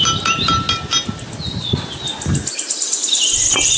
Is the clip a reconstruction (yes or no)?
no